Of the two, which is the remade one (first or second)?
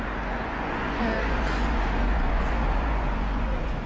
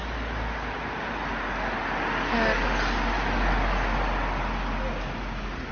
first